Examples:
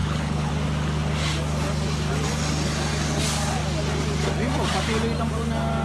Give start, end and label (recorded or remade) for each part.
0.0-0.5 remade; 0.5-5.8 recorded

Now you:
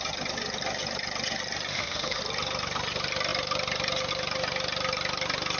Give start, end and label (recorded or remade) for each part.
0.0-1.7 recorded; 1.7-2.2 remade; 2.2-5.6 recorded